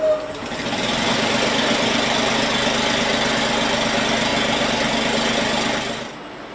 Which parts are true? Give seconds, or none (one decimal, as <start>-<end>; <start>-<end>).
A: 0.0-6.5